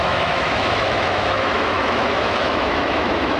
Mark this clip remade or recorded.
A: remade